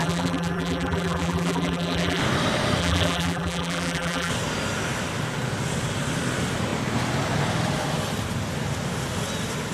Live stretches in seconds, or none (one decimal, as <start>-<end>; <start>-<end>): 2.2-2.8; 4.3-9.7